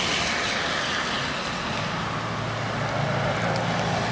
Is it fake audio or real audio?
real